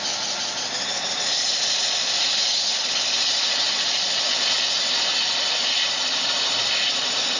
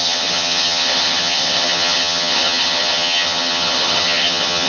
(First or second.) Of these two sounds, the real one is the first